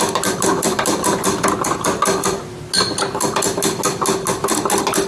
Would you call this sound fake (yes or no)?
no